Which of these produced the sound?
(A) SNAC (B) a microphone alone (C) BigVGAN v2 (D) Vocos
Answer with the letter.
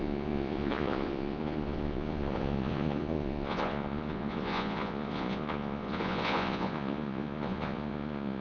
D